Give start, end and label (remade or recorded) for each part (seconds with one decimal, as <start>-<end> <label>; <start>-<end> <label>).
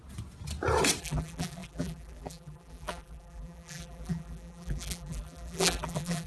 0.0-1.0 recorded; 1.0-6.3 remade